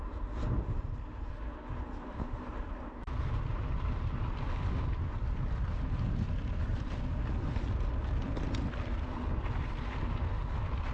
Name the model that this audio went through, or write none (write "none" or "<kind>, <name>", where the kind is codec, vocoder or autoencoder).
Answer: none